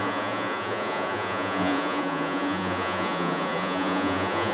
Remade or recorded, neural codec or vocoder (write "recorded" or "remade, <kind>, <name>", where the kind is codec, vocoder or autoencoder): remade, vocoder, Vocos